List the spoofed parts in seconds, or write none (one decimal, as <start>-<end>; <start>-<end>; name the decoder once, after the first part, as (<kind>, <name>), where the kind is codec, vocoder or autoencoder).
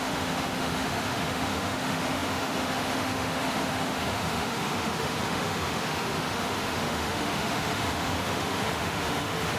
0.0-9.6 (autoencoder, DAC-VAE)